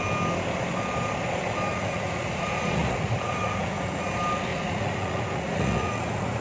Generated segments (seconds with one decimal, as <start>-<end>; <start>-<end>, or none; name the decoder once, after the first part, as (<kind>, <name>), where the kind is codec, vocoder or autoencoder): 1.7-4.1 (vocoder, Vocos); 4.5-6.4